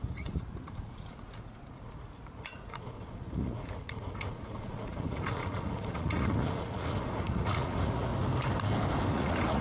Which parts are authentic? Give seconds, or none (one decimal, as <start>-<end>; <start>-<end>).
8.1-9.1